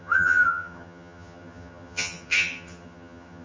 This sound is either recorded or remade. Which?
remade